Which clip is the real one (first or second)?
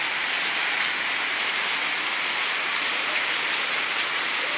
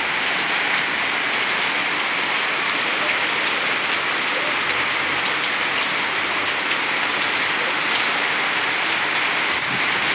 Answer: second